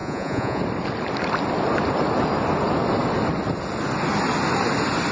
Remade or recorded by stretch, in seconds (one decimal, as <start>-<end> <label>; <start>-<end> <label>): 0.0-0.6 remade; 0.6-5.1 recorded